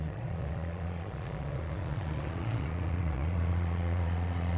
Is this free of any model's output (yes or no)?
no